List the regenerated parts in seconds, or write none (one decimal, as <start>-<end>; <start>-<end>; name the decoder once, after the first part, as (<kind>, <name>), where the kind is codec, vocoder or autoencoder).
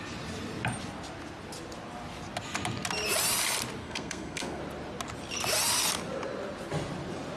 3.8-4.6 (codec, SNAC)